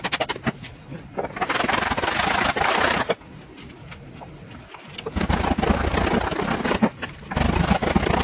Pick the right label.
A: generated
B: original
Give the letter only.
B